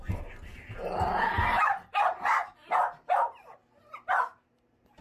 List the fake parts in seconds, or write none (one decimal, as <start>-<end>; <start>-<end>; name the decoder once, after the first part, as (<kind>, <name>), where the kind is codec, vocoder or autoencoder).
1.9-2.8 (vocoder, BigVGAN v2)